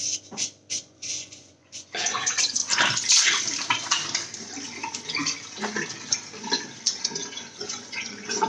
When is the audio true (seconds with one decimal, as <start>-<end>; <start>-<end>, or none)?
0.0-0.7; 2.6-7.0